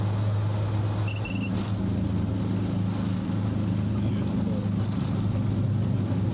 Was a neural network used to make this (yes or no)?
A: no